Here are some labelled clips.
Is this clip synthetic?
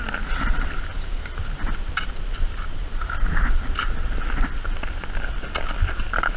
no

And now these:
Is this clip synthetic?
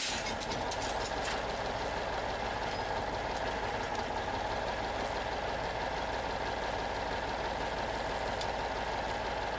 no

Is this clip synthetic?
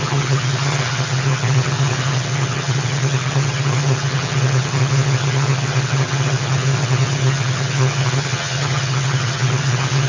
yes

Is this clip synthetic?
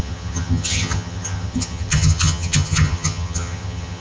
yes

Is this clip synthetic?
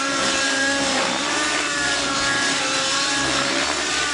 yes